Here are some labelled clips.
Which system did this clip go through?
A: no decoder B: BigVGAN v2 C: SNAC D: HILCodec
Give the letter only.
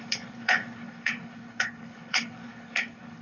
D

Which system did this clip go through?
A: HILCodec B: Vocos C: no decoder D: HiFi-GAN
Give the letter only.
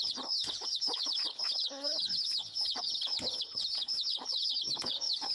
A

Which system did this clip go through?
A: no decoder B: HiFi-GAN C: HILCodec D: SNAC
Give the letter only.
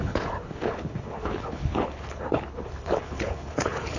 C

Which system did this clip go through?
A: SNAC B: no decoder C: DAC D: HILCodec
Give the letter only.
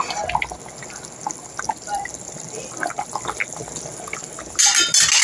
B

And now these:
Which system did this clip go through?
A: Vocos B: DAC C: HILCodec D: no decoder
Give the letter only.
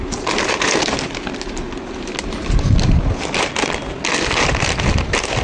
D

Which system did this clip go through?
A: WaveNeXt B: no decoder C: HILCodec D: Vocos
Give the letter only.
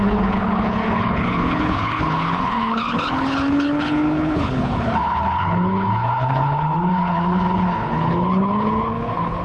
C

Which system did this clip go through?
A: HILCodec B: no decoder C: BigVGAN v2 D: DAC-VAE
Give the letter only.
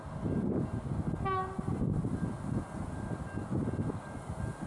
B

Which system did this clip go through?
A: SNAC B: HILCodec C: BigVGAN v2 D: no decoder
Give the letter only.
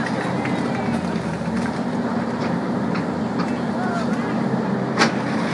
D